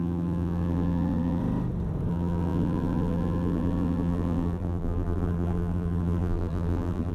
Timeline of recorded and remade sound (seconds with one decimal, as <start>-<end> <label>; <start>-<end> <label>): 0.0-1.4 remade; 1.4-2.1 recorded; 2.1-7.1 remade